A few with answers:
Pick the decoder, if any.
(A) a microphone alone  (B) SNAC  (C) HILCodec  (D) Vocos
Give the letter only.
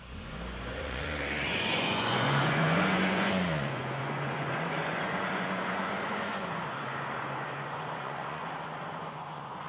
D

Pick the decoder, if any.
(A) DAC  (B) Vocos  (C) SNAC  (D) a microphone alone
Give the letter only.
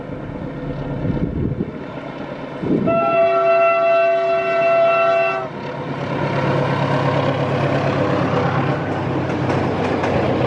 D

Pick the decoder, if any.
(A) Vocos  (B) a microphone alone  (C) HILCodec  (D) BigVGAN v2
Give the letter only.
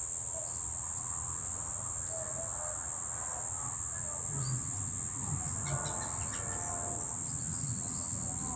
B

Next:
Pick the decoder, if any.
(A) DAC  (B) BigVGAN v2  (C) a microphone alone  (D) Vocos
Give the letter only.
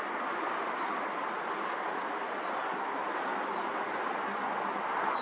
C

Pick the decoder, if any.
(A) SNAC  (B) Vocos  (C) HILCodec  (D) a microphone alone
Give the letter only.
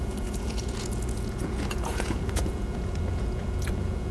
B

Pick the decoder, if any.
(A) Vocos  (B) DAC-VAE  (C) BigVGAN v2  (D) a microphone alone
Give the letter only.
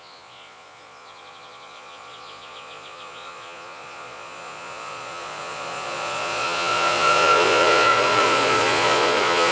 A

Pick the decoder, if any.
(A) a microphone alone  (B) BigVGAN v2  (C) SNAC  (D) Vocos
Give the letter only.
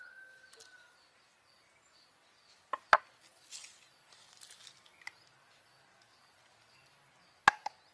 A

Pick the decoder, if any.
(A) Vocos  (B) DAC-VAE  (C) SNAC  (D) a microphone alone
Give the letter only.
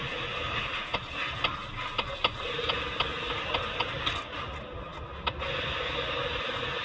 D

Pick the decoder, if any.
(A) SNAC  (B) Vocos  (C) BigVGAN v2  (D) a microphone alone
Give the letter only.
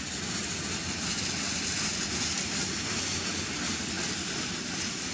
D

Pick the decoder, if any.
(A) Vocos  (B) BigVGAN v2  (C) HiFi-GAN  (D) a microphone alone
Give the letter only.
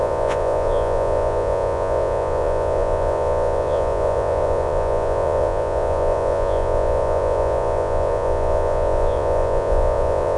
A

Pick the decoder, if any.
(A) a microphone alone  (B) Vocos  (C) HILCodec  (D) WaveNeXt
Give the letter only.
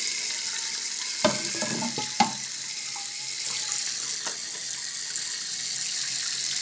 A